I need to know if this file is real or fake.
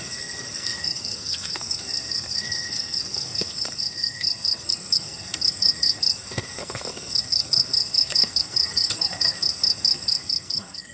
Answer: fake